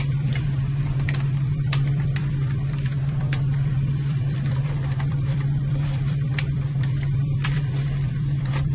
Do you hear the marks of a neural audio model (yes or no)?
yes